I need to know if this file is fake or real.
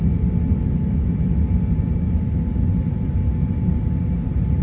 real